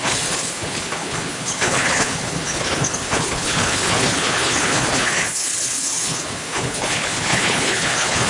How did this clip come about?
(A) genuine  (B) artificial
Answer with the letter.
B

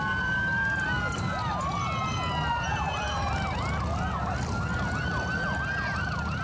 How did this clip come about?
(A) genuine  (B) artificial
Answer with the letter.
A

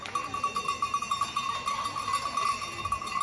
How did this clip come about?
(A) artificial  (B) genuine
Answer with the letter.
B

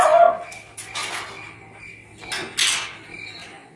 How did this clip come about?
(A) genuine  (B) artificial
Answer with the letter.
A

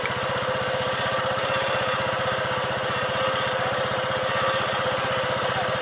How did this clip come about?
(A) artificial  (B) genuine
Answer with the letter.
B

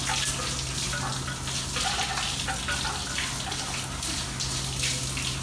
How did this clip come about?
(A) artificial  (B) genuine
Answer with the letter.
B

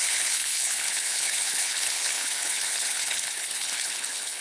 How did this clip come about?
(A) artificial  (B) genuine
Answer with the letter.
A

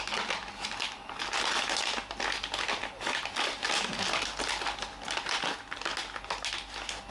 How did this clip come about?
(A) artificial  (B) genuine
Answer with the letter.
B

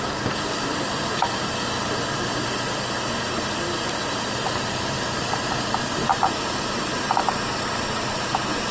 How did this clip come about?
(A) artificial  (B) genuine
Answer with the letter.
B